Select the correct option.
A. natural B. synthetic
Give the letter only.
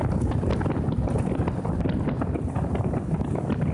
A